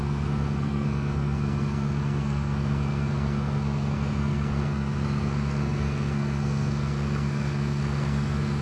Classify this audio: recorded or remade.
remade